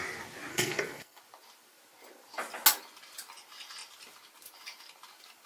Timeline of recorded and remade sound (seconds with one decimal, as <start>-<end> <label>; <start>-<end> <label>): 0.0-0.5 recorded; 0.5-1.2 remade; 1.2-5.5 recorded